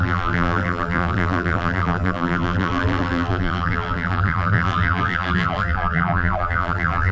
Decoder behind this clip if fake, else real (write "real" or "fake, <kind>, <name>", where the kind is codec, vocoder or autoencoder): fake, vocoder, BigVGAN v2